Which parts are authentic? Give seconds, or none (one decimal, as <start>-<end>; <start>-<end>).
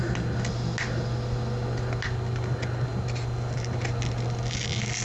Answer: 0.0-5.0